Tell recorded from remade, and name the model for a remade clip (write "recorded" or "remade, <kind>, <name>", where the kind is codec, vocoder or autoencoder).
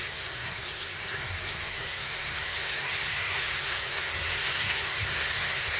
remade, codec, SNAC